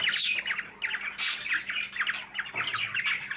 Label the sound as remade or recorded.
recorded